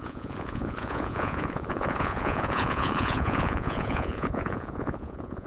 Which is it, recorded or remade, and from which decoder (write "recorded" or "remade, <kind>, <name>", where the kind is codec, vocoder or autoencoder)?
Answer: remade, vocoder, Vocos